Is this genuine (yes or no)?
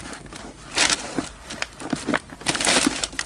yes